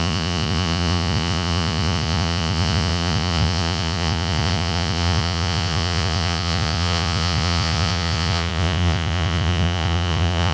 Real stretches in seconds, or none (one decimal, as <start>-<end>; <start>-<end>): none